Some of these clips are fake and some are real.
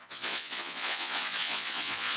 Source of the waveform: fake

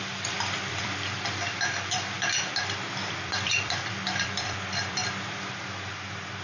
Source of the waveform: fake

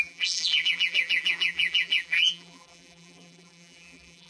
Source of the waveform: fake